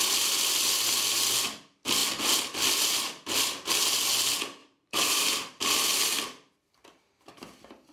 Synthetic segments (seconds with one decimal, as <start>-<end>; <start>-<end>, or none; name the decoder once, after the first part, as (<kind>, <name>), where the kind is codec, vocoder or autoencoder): 4.6-6.0 (vocoder, BigVGAN v2)